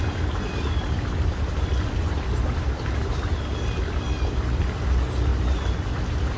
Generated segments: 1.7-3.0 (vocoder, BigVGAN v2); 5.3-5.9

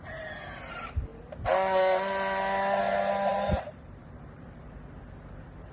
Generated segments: 3.3-4.1 (vocoder, BigVGAN v2)

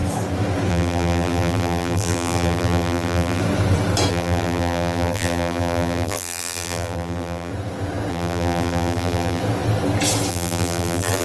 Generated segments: 0.7-3.4 (vocoder, BigVGAN v2); 4.1-7.5; 8.1-9.4; 10.3-11.2